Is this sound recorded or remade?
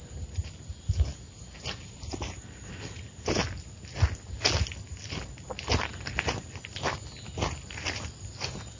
recorded